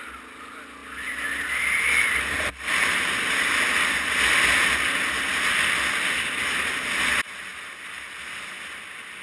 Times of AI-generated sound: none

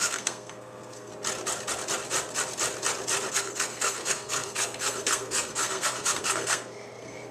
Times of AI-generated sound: 0.0-1.1 (codec, SNAC); 3.3-7.3

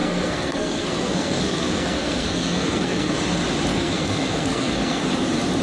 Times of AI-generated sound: 0.0-3.1 (codec, SNAC); 3.7-5.0

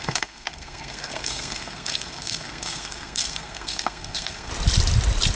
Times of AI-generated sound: 0.0-4.5 (codec, SNAC)

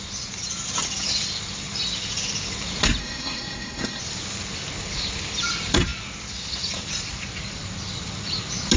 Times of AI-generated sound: 3.0-4.0 (codec, SNAC)

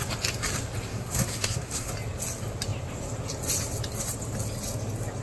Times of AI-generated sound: 0.9-1.9 (codec, SNAC)

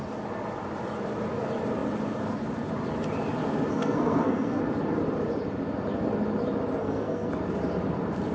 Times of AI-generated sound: 3.7-4.6 (codec, SNAC); 6.8-7.3

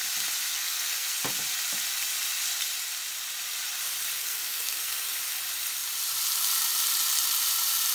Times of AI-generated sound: 0.5-1.2 (codec, SNAC); 4.2-5.1